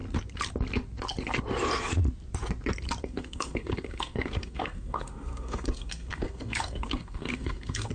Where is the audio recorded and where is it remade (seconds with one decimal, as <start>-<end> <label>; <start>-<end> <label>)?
0.0-3.0 recorded; 3.0-7.9 remade